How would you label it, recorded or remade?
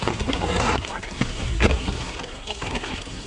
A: remade